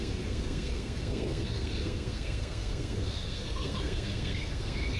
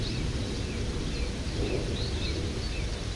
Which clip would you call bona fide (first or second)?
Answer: second